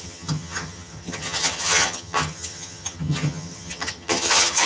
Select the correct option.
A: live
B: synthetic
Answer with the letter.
B